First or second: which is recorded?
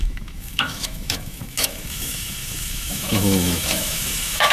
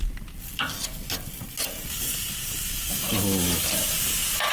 second